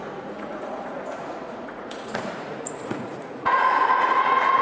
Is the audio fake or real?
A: fake